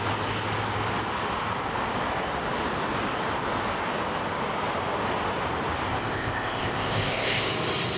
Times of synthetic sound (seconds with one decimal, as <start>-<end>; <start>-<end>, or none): 5.9-7.5